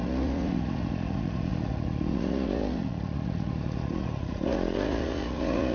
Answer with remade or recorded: remade